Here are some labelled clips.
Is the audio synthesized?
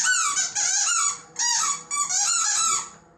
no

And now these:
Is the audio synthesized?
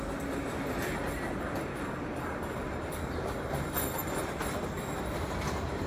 no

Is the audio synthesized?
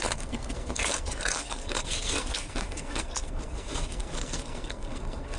yes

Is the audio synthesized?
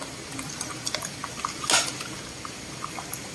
no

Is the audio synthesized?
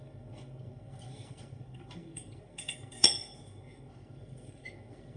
yes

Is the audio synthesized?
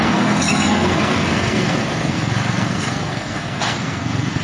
yes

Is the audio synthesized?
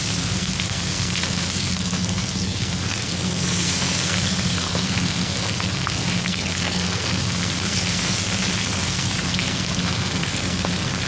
yes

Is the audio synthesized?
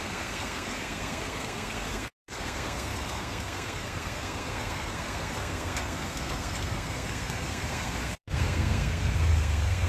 yes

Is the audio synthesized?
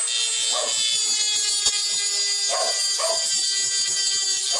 no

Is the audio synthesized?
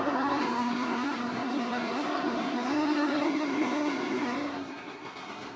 yes